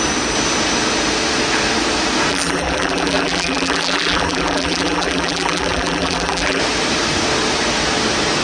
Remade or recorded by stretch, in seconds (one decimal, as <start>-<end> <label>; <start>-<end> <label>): 0.0-2.3 recorded; 2.3-6.6 remade; 6.6-8.4 recorded